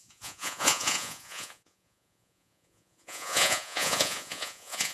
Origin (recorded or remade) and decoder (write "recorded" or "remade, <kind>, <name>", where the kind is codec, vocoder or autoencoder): remade, vocoder, Vocos